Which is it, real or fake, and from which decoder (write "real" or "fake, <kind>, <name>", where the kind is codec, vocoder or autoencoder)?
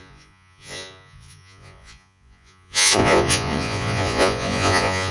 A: fake, vocoder, Vocos